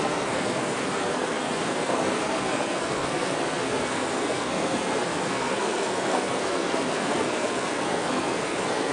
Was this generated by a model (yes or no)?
yes